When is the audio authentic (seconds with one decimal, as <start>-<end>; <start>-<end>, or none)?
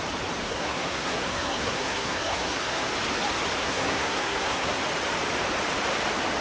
0.0-0.4; 2.9-3.6; 4.8-6.4